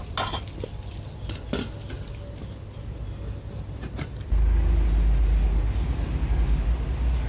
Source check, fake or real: real